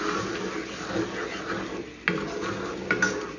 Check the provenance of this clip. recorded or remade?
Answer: recorded